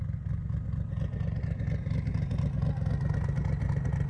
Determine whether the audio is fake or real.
real